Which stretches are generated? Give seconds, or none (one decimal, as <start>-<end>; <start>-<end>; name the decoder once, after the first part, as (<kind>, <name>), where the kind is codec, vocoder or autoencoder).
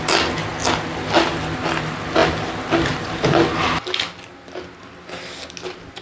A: none